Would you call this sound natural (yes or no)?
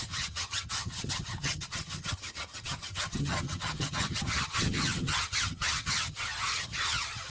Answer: no